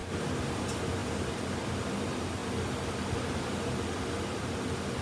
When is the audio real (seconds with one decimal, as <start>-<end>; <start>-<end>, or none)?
0.0-5.0